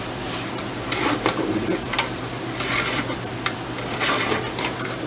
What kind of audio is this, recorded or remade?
remade